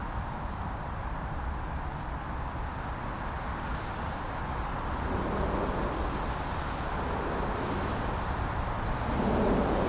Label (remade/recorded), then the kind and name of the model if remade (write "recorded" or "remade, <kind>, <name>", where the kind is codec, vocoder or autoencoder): recorded